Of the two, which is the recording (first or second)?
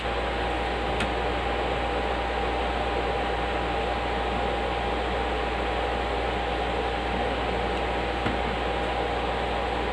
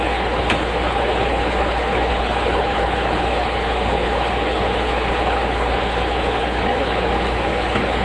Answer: first